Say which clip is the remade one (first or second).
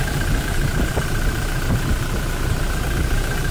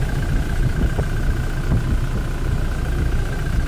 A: first